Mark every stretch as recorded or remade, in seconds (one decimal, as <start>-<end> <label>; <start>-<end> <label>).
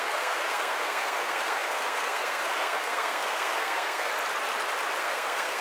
0.0-4.1 remade; 4.1-5.0 recorded; 5.0-5.6 remade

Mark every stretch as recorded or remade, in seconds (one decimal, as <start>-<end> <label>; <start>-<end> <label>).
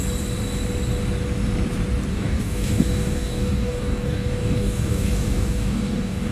0.0-2.1 recorded; 2.1-6.3 remade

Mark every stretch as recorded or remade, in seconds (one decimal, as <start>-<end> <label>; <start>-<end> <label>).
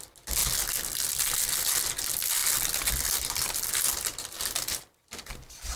0.0-5.8 recorded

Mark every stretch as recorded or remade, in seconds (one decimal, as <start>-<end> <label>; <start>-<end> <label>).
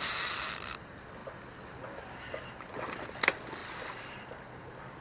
0.0-5.0 recorded